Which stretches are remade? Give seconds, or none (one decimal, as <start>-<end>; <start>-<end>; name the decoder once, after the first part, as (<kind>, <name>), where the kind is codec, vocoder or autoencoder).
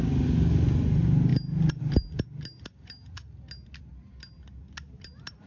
1.3-1.8 (vocoder, BigVGAN v2)